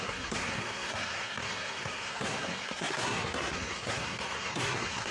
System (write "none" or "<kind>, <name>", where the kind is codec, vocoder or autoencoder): codec, SNAC